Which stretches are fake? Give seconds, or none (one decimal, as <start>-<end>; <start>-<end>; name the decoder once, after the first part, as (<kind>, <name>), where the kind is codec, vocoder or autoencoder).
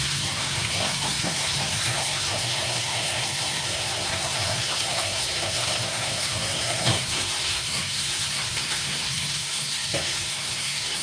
0.0-11.0 (codec, SNAC)